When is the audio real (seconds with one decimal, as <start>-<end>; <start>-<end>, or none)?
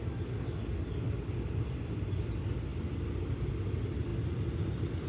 0.0-5.1